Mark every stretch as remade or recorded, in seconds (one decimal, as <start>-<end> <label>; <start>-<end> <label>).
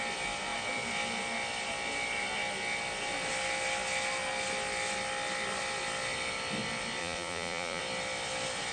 0.0-7.0 recorded; 7.0-7.8 remade; 7.8-8.7 recorded